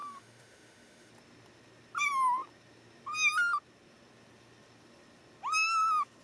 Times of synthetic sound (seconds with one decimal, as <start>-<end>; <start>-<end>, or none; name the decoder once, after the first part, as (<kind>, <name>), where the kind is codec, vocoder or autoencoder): 0.0-1.1 (autoencoder, DAC-VAE)